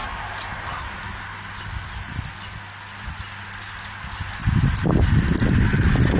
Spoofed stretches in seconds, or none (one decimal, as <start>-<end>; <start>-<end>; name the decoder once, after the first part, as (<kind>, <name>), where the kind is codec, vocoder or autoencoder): none